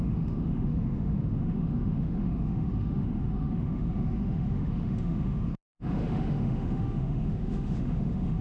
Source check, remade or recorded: remade